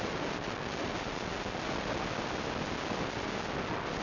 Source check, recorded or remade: recorded